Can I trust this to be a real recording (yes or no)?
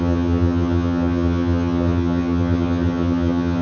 no